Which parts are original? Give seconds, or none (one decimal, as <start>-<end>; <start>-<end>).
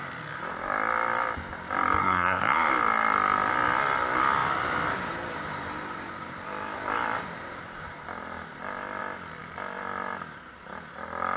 0.0-2.0; 2.7-11.4